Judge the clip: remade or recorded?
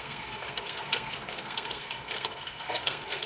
remade